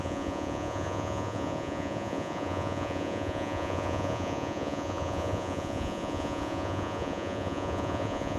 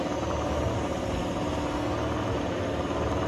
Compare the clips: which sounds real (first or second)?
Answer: second